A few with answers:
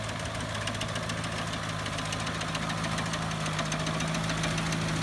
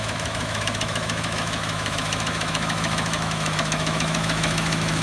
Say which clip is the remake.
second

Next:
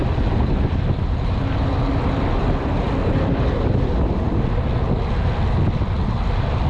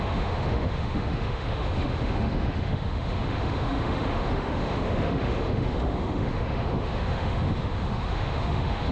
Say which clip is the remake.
second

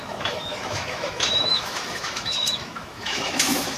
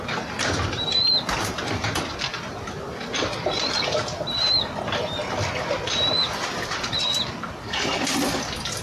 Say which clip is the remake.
first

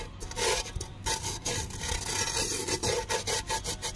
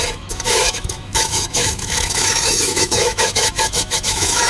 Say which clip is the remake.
second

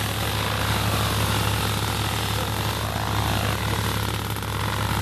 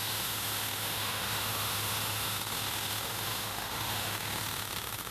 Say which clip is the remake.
second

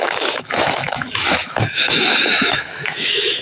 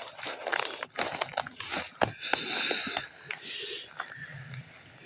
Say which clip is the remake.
first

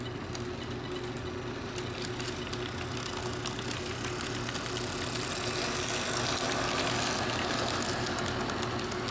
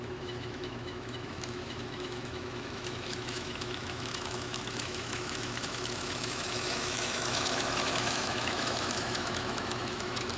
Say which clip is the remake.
second